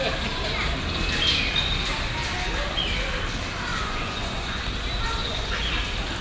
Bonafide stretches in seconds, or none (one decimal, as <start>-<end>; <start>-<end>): 0.0-3.7; 4.6-5.2; 5.7-6.2